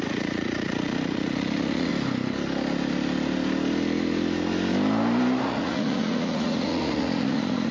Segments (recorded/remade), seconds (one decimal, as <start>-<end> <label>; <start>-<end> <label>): 0.0-1.9 remade; 1.9-5.4 recorded; 5.4-7.7 remade